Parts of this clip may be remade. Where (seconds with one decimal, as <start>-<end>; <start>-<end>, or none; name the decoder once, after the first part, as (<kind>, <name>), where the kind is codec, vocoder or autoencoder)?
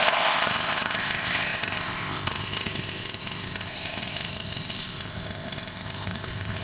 0.0-6.6 (codec, ZipCodec)